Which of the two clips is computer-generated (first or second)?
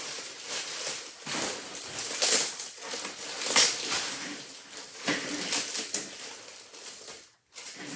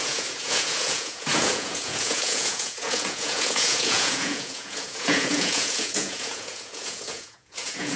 second